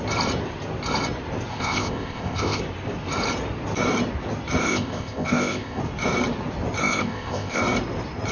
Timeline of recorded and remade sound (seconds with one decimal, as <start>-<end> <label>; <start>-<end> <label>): 0.0-1.5 recorded; 1.5-2.6 remade; 2.6-4.6 recorded; 4.6-5.8 remade; 5.8-6.8 recorded; 6.8-7.6 remade; 7.6-8.3 recorded

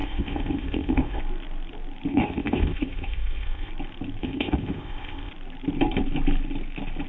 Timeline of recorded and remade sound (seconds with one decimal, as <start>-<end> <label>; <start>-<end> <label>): 0.0-1.2 remade; 1.2-2.1 recorded; 2.1-3.7 remade; 3.7-4.2 recorded; 4.2-5.3 remade; 5.3-7.1 recorded

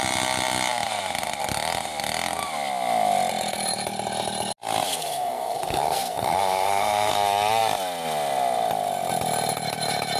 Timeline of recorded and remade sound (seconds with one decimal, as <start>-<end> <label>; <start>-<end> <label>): 0.0-4.9 recorded; 4.9-7.1 remade; 7.1-10.2 recorded

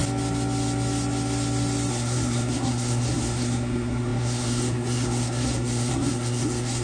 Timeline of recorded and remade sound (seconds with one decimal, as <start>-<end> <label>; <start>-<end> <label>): 0.0-1.9 recorded; 1.9-6.8 remade